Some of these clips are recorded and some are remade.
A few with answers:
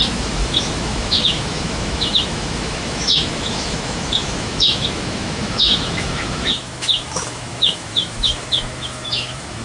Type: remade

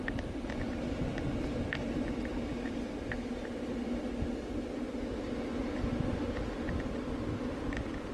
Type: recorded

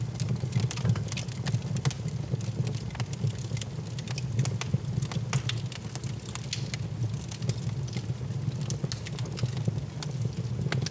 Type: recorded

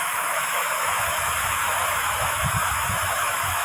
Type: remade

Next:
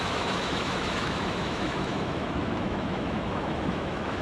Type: remade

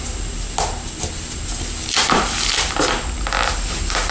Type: recorded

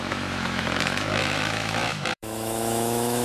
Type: remade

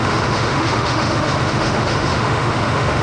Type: remade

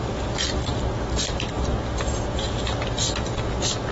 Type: recorded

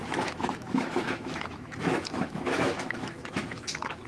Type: remade